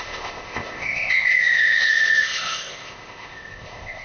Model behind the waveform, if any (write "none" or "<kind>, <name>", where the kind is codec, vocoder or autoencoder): codec, ZipCodec